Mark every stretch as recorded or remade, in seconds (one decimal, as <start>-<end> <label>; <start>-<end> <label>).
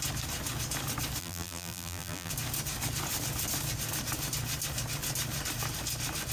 0.0-1.2 recorded; 1.2-2.3 remade; 2.3-6.3 recorded